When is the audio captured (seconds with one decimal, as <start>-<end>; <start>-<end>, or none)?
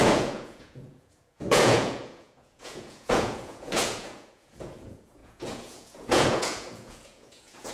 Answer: none